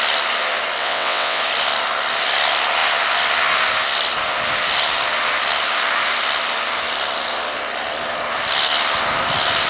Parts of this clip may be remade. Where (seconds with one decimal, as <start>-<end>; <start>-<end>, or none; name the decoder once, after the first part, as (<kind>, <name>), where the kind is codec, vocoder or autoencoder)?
0.8-1.4 (vocoder, WaveNeXt)